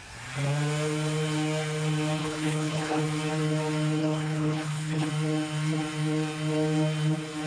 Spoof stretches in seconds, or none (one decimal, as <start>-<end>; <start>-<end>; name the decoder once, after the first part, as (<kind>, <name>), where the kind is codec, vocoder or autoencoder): 2.2-3.0 (codec, HILCodec); 4.0-5.1